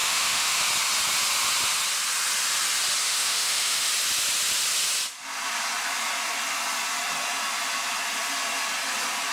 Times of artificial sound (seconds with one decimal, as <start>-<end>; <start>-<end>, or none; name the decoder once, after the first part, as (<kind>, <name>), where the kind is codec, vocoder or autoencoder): 0.0-0.6 (autoencoder, DAC-VAE); 3.0-3.9